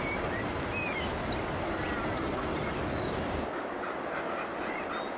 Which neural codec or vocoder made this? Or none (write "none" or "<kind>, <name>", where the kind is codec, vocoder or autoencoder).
none